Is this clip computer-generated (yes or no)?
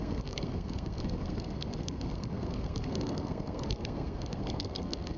yes